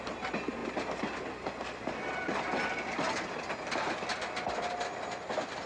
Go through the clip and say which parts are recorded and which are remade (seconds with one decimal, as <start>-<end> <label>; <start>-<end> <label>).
0.0-4.1 remade; 4.1-5.7 recorded

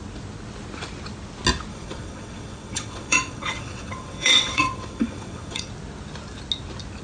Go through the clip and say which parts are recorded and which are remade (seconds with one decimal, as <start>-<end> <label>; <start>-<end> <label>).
0.0-1.7 recorded; 1.7-5.7 remade; 5.7-7.0 recorded

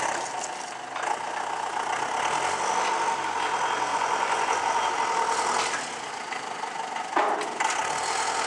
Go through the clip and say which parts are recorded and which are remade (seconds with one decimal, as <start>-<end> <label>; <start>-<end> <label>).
0.0-3.9 recorded; 3.9-4.9 remade; 4.9-8.5 recorded

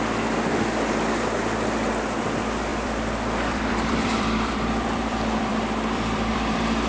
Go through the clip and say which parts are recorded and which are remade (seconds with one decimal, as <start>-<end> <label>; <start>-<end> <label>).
0.0-2.7 recorded; 2.7-6.9 remade

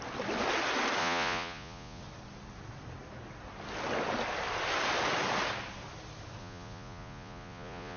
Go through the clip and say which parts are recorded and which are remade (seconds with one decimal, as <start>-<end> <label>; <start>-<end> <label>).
0.0-1.0 recorded; 1.0-2.0 remade; 2.0-6.4 recorded; 6.4-8.0 remade

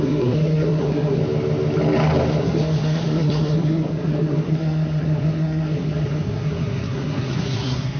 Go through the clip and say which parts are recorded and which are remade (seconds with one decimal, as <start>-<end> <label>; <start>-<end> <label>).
0.0-1.2 remade; 1.2-2.4 recorded; 2.4-8.0 remade